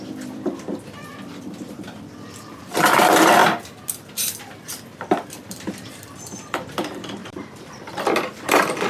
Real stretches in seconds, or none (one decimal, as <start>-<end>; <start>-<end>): 3.4-4.4